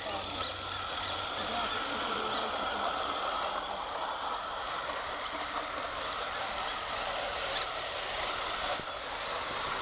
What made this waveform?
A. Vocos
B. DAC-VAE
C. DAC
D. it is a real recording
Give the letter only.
D